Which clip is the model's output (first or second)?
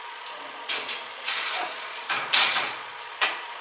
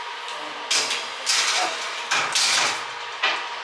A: first